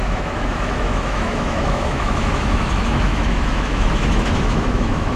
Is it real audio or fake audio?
fake